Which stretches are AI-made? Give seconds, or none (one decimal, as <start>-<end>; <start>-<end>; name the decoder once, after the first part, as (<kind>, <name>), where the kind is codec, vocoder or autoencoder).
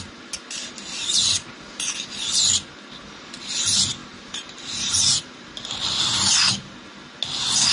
4.0-5.7 (vocoder, BigVGAN v2)